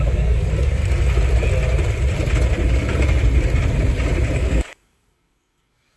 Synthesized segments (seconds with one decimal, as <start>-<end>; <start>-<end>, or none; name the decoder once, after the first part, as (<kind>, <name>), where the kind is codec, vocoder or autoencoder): 0.0-0.8 (codec, DAC); 4.4-6.0